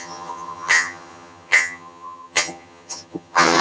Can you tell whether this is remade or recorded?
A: remade